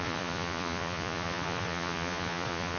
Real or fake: fake